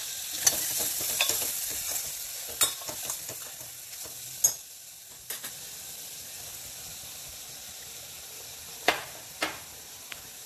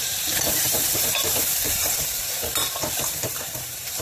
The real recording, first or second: first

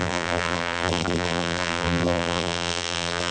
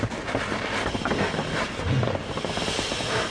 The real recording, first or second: second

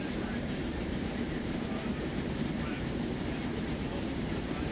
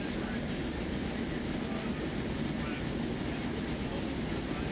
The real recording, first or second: second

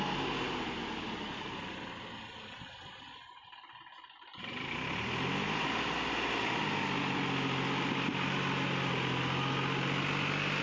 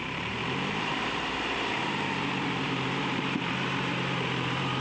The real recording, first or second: first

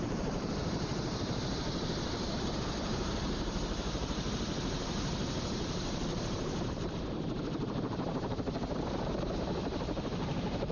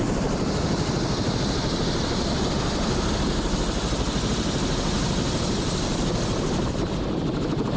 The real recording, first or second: second